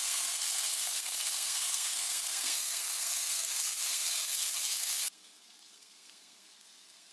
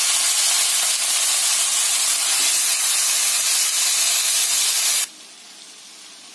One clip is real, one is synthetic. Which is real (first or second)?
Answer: second